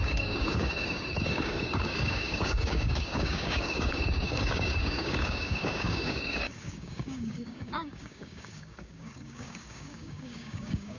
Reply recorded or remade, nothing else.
remade